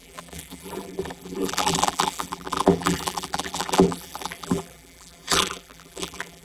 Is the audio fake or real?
fake